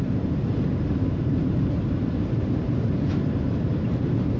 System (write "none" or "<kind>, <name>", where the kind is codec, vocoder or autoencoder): vocoder, BigVGAN v2